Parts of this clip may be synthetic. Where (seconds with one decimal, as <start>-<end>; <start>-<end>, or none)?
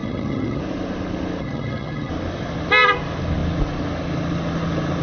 0.0-0.6; 1.4-2.1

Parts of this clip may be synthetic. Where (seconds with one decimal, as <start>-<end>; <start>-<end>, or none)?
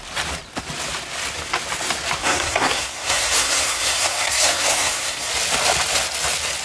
2.2-5.3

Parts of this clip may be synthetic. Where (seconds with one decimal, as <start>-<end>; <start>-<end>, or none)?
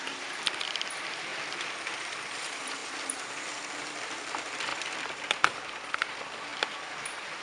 0.0-2.8; 4.3-6.5; 7.0-7.4